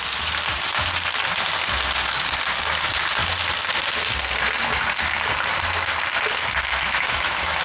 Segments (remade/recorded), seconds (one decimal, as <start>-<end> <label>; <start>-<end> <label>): 0.0-6.7 recorded; 6.7-7.6 remade